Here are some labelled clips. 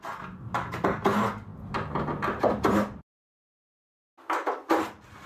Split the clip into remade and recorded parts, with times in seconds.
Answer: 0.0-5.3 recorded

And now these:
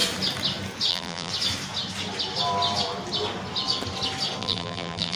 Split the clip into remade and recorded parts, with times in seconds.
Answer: 0.0-0.9 recorded; 0.9-1.3 remade; 1.3-4.4 recorded; 4.4-5.2 remade

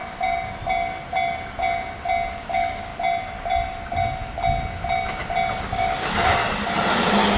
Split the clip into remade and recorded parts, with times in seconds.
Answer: 0.0-2.3 recorded; 2.3-2.9 remade; 2.9-5.6 recorded; 5.6-6.4 remade; 6.4-7.4 recorded

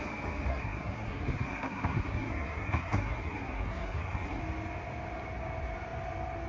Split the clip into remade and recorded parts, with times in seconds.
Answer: 0.0-0.5 recorded; 0.5-4.4 remade; 4.4-6.5 recorded

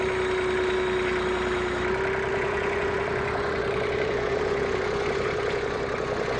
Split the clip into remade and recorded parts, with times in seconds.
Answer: 0.0-2.3 recorded; 2.3-6.4 remade

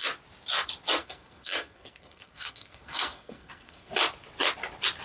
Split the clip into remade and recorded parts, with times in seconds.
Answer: 0.0-1.0 recorded; 1.0-3.9 remade; 3.9-5.0 recorded

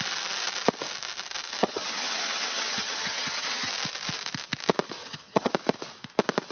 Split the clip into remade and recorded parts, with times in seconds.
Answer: 0.0-1.6 recorded; 1.6-3.7 remade; 3.7-5.0 recorded; 5.0-5.5 remade; 5.5-6.5 recorded